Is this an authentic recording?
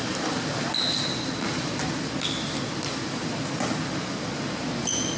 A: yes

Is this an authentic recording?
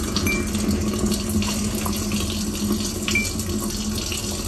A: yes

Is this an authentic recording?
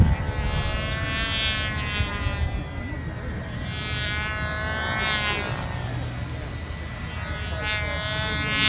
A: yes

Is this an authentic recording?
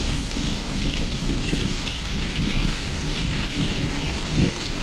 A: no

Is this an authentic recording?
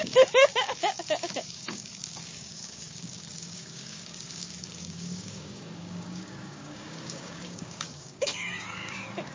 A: no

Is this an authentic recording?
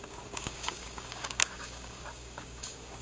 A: no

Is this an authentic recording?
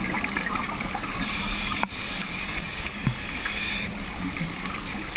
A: no